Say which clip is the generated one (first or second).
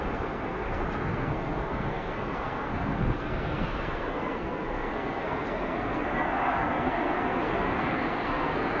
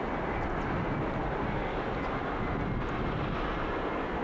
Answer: first